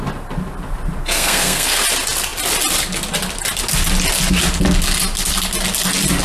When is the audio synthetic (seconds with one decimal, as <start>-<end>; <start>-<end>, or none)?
1.0-1.8